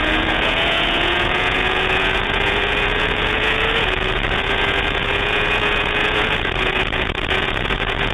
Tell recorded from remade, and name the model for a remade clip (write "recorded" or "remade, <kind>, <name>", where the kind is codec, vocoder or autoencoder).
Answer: remade, vocoder, Vocos